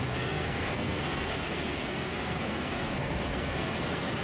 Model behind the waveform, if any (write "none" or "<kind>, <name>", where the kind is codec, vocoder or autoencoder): codec, SNAC